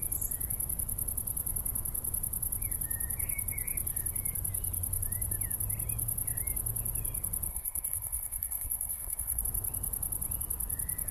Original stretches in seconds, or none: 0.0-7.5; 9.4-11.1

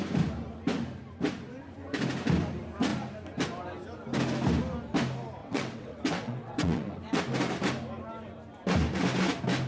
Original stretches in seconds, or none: 0.0-5.4; 7.2-9.7